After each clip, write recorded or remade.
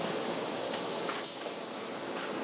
remade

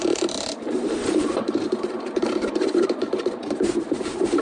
remade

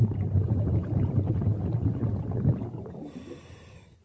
recorded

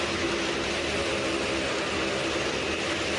recorded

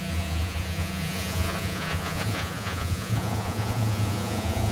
remade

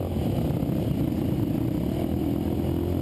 recorded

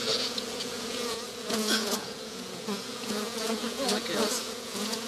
remade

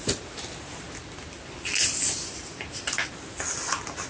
recorded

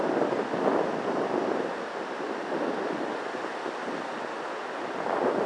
recorded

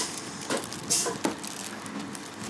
recorded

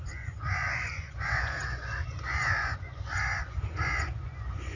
remade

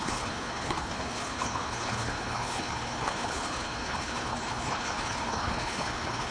remade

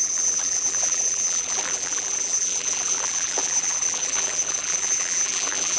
remade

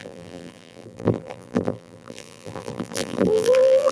remade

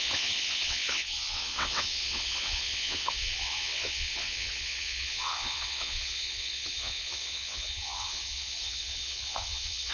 remade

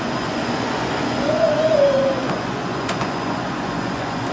remade